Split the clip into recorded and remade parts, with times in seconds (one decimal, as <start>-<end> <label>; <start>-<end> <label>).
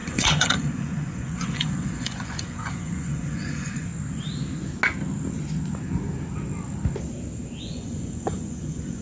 0.0-3.9 remade; 3.9-7.6 recorded; 7.6-9.0 remade